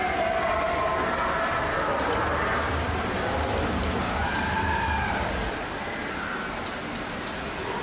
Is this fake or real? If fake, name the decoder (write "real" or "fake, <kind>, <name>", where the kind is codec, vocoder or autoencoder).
real